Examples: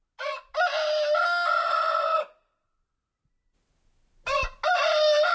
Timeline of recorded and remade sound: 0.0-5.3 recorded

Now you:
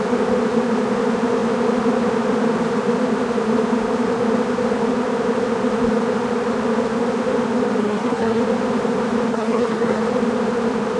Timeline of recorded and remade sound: 0.0-7.8 recorded; 7.8-8.4 remade; 8.4-9.3 recorded; 9.3-10.0 remade; 10.0-11.0 recorded

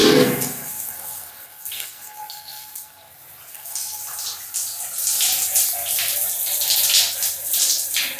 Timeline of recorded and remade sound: 0.0-3.1 remade; 3.1-3.5 recorded; 3.5-4.0 remade; 4.0-8.2 recorded

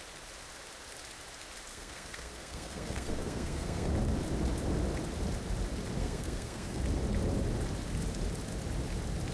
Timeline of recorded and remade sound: 0.0-1.7 recorded; 1.7-3.9 remade; 3.9-6.0 recorded; 6.0-6.8 remade; 6.8-9.3 recorded

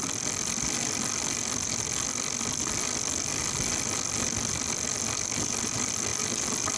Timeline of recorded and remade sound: 0.0-6.8 recorded